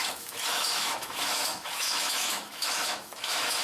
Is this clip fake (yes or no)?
yes